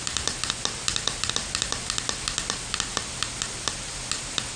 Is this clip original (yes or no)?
yes